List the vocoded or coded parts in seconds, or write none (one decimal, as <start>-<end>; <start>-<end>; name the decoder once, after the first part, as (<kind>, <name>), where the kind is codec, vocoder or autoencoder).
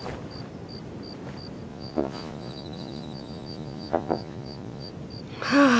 1.7-4.9 (vocoder, Vocos)